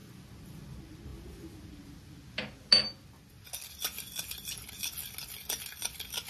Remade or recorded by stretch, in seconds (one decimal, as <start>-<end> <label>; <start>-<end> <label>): 0.0-6.3 recorded